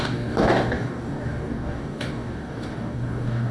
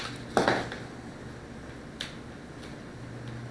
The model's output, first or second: first